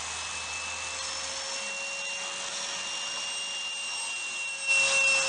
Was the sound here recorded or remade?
recorded